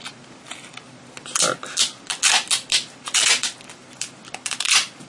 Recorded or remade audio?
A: recorded